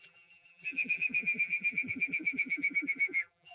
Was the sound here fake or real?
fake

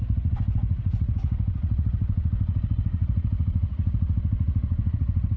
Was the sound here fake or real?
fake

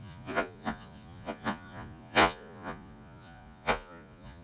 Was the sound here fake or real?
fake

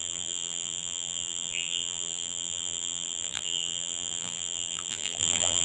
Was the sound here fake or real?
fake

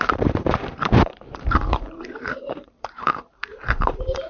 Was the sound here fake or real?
fake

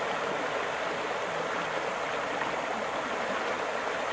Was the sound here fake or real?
real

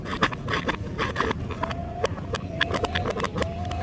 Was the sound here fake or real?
fake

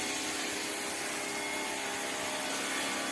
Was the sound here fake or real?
real